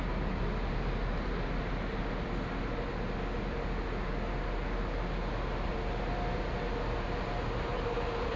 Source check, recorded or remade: recorded